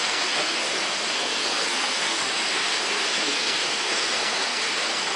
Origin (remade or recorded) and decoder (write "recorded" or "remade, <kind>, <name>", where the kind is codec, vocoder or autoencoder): remade, codec, SNAC